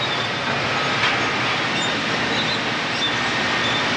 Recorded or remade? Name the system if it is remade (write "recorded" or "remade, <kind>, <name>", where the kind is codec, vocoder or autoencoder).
recorded